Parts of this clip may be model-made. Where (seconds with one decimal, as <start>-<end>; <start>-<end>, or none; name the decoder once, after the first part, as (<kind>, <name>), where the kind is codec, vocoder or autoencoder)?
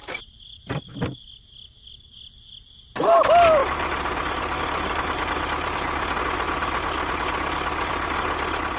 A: none